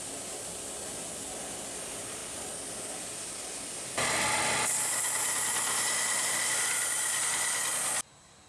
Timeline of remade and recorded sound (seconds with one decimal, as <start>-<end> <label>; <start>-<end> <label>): 0.0-8.5 recorded